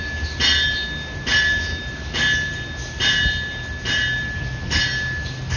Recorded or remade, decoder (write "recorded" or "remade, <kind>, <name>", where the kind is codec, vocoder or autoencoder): recorded